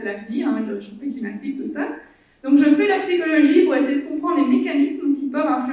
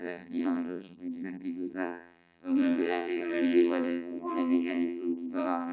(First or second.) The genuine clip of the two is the first